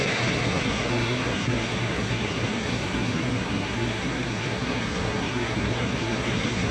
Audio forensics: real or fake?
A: fake